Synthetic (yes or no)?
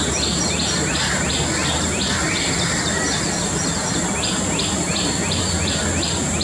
no